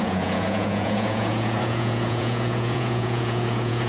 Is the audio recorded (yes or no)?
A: no